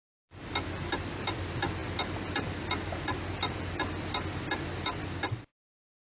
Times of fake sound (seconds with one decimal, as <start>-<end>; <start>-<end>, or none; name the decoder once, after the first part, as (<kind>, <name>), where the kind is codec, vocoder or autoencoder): none